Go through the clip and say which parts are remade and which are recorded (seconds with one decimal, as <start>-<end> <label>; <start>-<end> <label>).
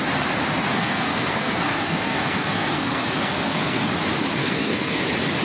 0.0-0.7 recorded; 0.7-3.9 remade; 3.9-4.4 recorded; 4.4-5.0 remade; 5.0-5.4 recorded